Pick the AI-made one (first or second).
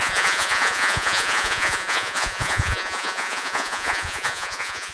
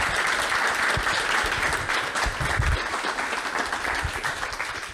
first